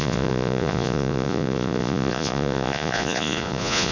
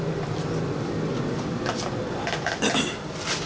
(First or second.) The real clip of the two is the second